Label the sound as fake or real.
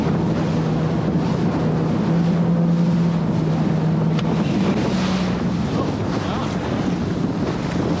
real